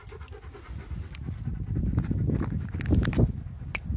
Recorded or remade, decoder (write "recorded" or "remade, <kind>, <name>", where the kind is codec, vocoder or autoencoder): recorded